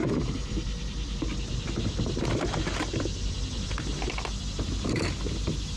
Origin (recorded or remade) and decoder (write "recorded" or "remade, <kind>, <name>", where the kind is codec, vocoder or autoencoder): recorded